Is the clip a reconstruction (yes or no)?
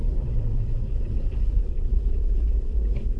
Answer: yes